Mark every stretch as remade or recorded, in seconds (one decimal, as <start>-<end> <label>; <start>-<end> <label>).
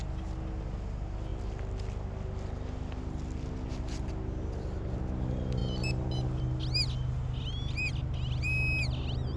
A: 0.0-9.4 recorded